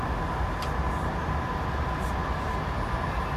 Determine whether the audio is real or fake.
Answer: real